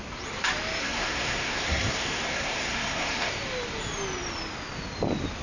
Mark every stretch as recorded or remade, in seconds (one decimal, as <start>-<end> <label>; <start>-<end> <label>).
0.0-0.8 recorded; 0.8-3.3 remade; 3.3-5.4 recorded